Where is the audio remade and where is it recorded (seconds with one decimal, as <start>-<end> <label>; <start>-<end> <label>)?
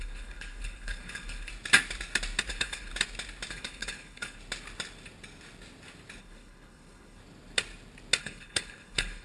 0.0-1.5 remade; 1.5-2.5 recorded; 2.5-2.9 remade; 2.9-3.5 recorded; 3.5-4.4 remade; 4.4-6.2 recorded; 6.2-7.2 remade; 7.2-8.2 recorded; 8.2-9.2 remade